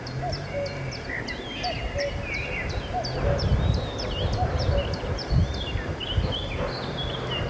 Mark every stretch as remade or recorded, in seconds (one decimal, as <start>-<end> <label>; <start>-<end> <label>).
0.0-7.5 recorded